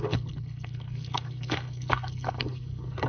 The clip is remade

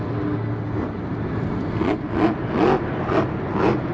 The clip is recorded